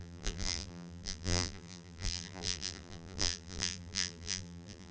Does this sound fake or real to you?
fake